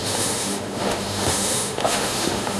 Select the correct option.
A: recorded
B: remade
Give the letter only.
B